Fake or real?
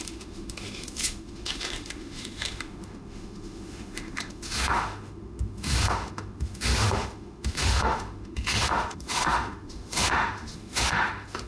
fake